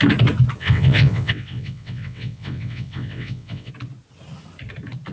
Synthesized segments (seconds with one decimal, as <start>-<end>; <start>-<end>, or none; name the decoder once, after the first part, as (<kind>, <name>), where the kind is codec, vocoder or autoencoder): 0.6-3.7 (vocoder, WaveNeXt)